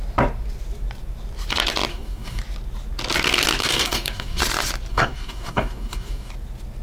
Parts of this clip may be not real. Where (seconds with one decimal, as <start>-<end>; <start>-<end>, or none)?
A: 1.9-2.4; 3.6-4.4; 4.9-6.3